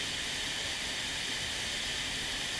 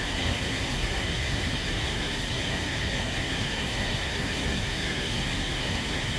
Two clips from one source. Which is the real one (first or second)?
first